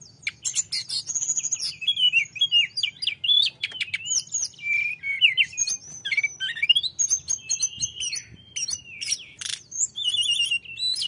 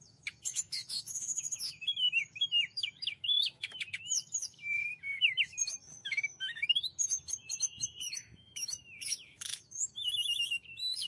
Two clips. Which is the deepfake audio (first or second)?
second